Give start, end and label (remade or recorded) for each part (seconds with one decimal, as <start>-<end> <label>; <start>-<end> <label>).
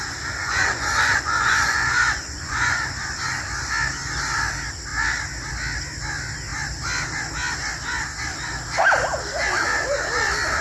0.0-0.4 recorded; 0.4-2.8 remade; 2.8-10.6 recorded